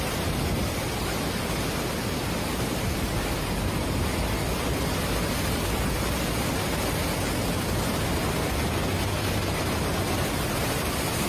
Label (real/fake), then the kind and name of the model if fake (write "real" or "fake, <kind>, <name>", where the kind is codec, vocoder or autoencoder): real